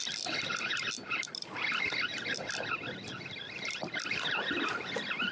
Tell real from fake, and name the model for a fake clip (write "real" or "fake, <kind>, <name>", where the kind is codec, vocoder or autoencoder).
real